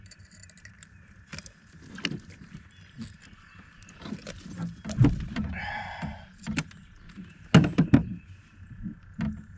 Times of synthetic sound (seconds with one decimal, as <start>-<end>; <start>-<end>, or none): none